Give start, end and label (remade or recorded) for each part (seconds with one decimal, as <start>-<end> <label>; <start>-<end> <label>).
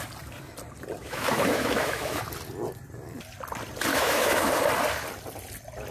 0.0-1.0 recorded; 1.0-2.2 remade; 2.2-3.9 recorded; 3.9-4.5 remade; 4.5-5.9 recorded